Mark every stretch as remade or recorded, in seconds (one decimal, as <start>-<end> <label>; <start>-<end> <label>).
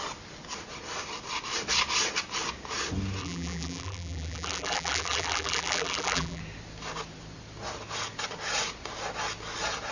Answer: 0.0-3.2 recorded; 3.2-6.4 remade; 6.4-9.9 recorded